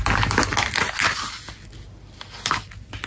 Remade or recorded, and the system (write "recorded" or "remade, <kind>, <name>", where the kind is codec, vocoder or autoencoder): recorded